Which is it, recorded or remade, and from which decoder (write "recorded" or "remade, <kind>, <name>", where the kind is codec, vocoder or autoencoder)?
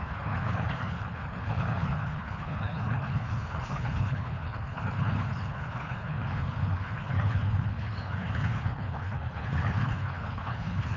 remade, codec, HILCodec